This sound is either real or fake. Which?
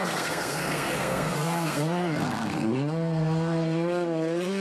fake